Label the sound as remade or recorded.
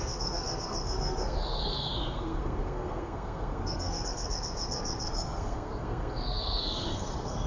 remade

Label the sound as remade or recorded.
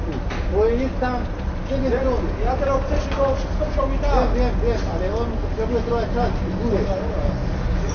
recorded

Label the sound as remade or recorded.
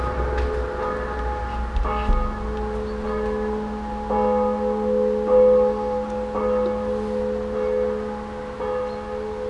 recorded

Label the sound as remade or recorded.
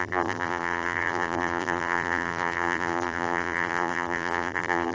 remade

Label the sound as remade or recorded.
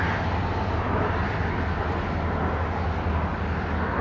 recorded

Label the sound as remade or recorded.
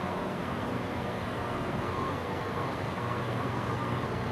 remade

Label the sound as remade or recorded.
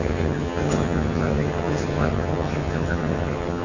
remade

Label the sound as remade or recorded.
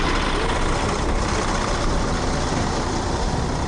recorded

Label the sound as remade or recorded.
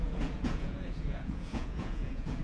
remade